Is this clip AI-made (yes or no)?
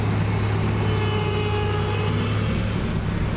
no